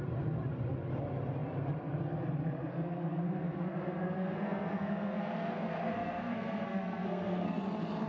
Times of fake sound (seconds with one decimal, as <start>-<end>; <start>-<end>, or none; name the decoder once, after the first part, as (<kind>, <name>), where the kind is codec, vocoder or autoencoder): 2.7-7.6 (codec, SNAC)